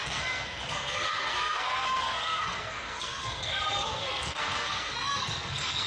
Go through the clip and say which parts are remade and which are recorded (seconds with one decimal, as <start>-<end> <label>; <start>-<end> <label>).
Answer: 0.0-5.9 remade